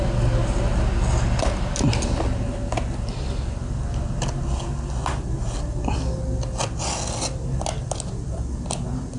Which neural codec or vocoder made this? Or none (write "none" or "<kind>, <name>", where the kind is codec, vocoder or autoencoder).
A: none